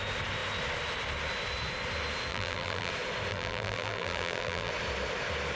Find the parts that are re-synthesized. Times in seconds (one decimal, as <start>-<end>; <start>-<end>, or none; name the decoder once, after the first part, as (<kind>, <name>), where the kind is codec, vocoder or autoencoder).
2.3-2.9 (vocoder, BigVGAN v2); 3.3-4.7